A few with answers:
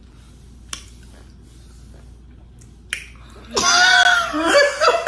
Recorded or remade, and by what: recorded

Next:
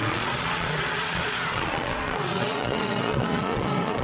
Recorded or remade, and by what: remade, vocoder, Vocos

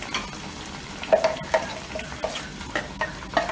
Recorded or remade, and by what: recorded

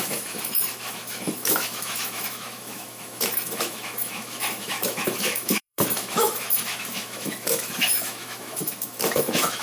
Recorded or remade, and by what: remade, autoencoder, DAC-VAE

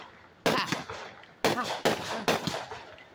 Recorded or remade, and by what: recorded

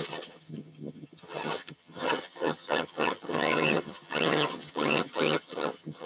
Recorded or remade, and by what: remade, vocoder, HiFi-GAN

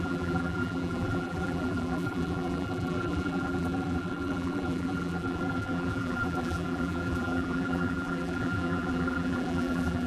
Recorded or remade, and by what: remade, vocoder, BigVGAN v2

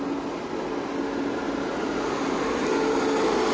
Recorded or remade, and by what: recorded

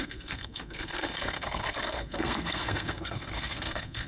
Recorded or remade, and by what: remade, codec, SNAC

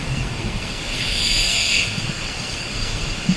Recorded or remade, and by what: remade, codec, SNAC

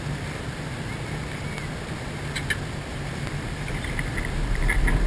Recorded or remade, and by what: recorded